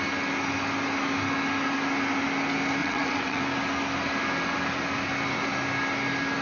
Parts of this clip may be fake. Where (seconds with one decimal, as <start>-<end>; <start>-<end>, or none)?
2.8-3.4